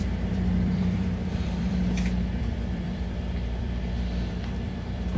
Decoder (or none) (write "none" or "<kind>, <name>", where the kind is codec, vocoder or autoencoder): vocoder, BigVGAN v2